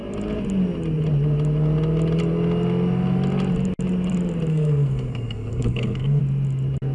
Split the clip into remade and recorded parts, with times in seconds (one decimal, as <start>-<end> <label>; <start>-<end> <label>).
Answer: 0.0-4.5 recorded; 4.5-6.2 remade; 6.2-6.9 recorded